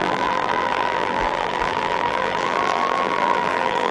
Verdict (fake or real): fake